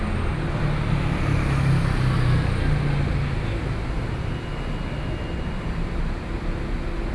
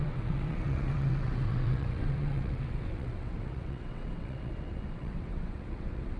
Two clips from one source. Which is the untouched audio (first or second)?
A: first